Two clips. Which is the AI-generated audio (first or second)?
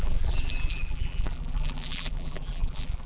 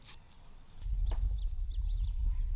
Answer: first